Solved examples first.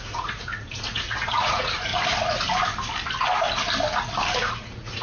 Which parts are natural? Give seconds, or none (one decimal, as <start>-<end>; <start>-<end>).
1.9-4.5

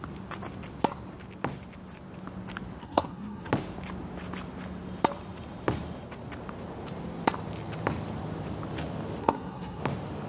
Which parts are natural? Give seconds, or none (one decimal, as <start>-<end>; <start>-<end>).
0.0-2.8; 3.5-9.2; 9.8-10.3

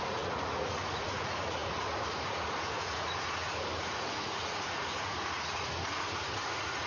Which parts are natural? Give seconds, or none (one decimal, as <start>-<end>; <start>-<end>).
none

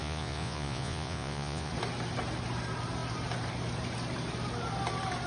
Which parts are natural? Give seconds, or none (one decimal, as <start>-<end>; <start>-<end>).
1.7-5.3

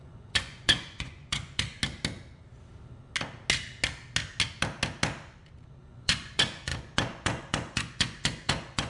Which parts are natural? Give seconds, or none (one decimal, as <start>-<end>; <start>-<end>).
1.8-5.8

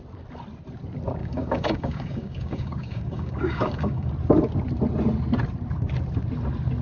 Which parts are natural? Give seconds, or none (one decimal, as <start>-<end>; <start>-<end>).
0.0-1.2; 4.1-6.8